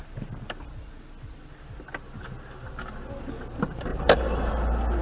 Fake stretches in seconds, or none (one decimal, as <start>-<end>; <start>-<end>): 3.9-4.5